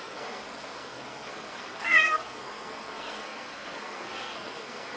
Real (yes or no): no